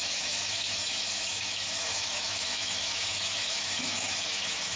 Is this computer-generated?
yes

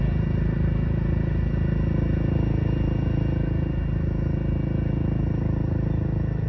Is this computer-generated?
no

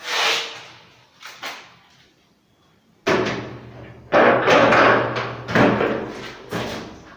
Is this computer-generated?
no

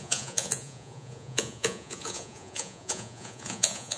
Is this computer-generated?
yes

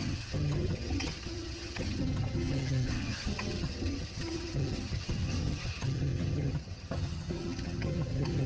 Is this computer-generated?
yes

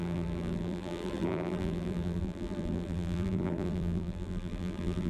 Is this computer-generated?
yes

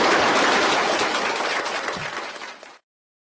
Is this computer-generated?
no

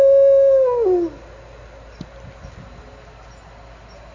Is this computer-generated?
no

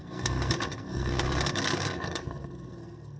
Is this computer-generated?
yes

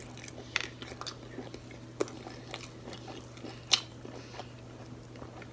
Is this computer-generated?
no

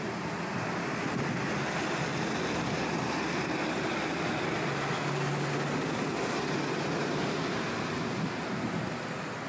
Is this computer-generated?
no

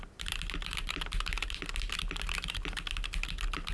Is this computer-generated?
no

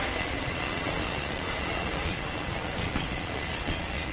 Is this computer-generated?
yes